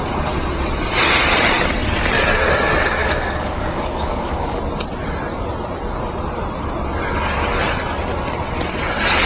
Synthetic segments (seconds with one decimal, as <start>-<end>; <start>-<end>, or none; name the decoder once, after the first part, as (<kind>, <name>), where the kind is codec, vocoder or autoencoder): 3.0-4.6 (codec, DAC)